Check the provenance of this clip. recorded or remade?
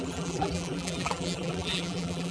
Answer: remade